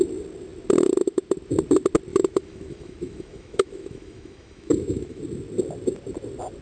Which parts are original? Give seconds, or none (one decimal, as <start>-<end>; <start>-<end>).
0.0-2.1; 5.2-6.6